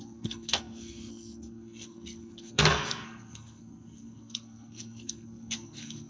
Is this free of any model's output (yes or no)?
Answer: no